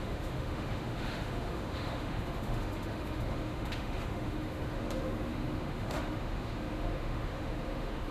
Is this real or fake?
fake